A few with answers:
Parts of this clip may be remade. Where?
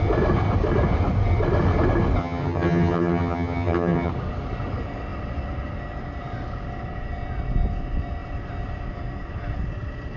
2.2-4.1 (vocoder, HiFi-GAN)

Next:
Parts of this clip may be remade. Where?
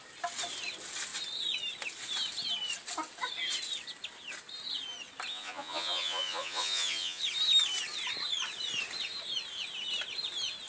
5.3-7.2 (vocoder, Vocos)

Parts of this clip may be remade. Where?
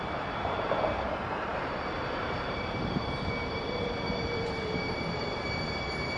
0.0-6.2 (vocoder, BigVGAN v2)